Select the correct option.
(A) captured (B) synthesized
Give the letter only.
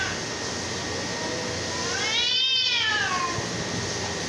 A